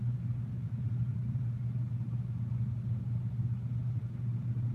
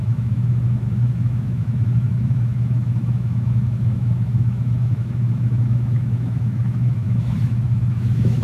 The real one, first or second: first